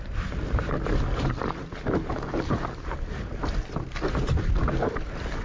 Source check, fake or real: fake